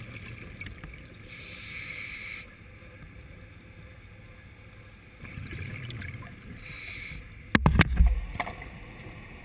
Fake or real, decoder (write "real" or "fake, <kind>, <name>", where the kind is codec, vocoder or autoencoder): real